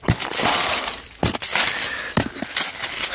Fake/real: real